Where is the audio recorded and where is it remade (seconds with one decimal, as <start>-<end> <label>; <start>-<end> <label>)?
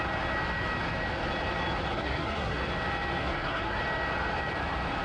0.0-1.9 recorded; 1.9-2.6 remade; 2.6-3.2 recorded; 3.2-3.8 remade; 3.8-5.0 recorded